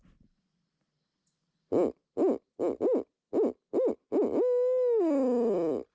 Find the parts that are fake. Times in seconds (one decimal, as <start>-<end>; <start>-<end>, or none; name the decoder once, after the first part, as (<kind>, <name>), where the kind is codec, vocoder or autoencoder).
none